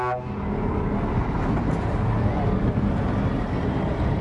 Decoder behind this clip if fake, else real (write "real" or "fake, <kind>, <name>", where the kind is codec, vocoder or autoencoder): real